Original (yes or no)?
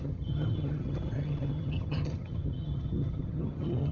no